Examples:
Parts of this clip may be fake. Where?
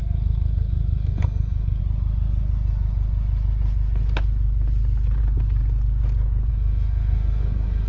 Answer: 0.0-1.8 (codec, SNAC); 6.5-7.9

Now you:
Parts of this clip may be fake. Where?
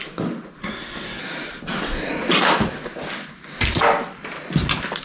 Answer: 0.6-1.2 (codec, SNAC)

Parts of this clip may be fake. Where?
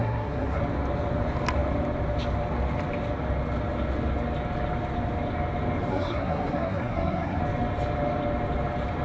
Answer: 0.0-0.6 (codec, SNAC); 5.9-7.4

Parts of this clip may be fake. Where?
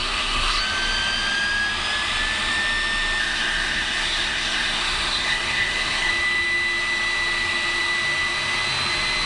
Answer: 0.0-0.6 (codec, SNAC); 3.2-6.1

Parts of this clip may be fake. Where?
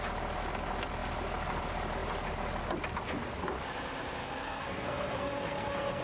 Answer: 4.2-6.0 (codec, SNAC)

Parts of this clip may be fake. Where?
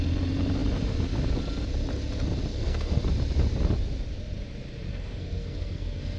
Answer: 2.5-3.0 (codec, SNAC); 4.9-6.2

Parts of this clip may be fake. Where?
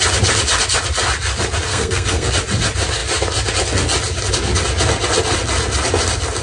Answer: 1.7-2.3 (codec, SNAC)